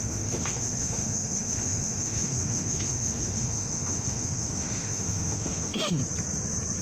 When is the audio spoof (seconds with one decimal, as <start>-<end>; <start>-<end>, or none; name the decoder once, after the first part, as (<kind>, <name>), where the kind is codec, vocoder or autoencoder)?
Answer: 0.0-6.0 (autoencoder, DAC-VAE)